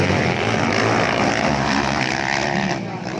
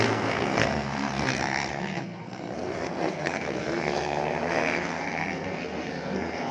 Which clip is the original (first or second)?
first